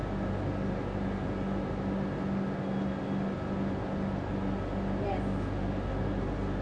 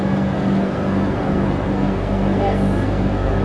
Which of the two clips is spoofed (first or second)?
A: second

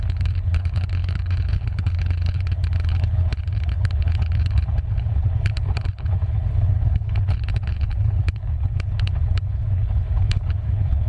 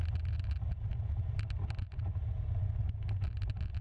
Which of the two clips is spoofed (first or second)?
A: first